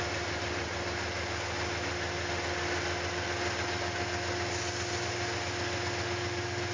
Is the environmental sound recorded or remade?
recorded